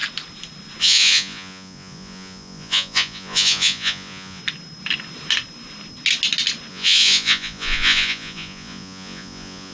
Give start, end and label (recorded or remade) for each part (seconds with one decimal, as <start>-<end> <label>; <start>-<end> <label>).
0.0-0.8 recorded; 0.8-4.4 remade; 4.4-6.7 recorded; 6.7-9.7 remade